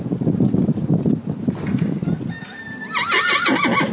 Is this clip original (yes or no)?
yes